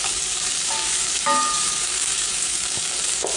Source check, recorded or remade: remade